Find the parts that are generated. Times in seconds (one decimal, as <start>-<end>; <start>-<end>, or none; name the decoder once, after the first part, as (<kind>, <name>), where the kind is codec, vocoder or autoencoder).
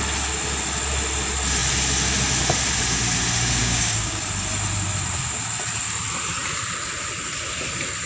3.6-4.2 (codec, DAC)